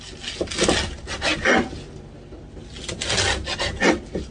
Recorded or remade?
recorded